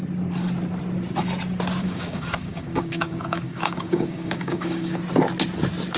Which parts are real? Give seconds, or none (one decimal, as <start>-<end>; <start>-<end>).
0.0-1.8; 5.0-6.0